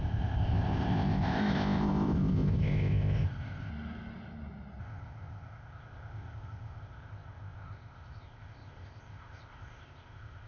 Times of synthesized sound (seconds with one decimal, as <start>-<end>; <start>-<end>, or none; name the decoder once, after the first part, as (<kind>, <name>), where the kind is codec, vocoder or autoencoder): 0.0-3.7 (codec, ZipCodec); 4.8-10.5